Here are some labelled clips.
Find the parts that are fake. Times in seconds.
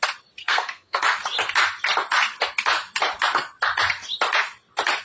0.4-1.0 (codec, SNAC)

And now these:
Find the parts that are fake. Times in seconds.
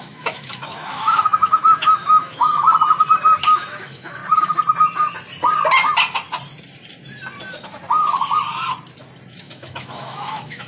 0.0-2.7 (autoencoder, DAC-VAE); 3.4-4.2; 9.3-10.7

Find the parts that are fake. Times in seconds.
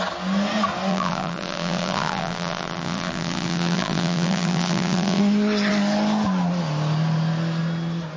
0.9-5.2 (vocoder, BigVGAN v2)